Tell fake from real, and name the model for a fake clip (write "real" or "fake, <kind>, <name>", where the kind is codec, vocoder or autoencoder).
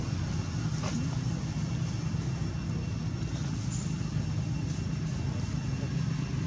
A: real